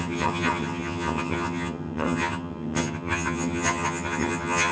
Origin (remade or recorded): remade